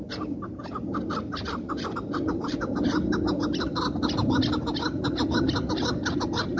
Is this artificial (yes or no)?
no